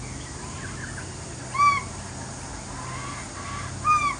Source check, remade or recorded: recorded